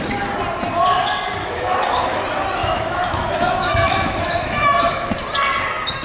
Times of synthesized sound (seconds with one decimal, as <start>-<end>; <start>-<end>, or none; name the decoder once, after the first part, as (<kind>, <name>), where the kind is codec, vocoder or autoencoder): 1.4-2.2 (autoencoder, DAC-VAE); 2.6-5.1